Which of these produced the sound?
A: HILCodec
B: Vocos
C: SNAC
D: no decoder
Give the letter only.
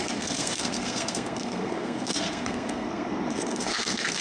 C